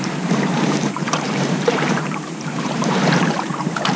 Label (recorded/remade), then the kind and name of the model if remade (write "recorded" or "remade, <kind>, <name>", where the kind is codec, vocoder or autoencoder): remade, vocoder, BigVGAN v2